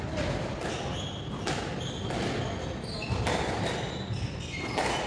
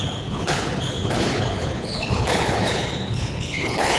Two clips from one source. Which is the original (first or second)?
first